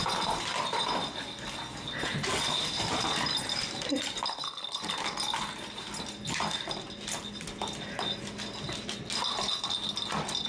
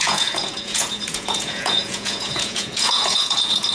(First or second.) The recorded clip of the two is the first